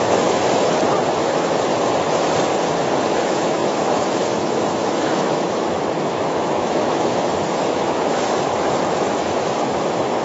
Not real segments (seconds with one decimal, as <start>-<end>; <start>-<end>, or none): 0.0-0.4; 1.2-1.7; 3.1-10.2